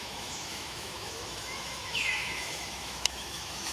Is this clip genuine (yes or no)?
no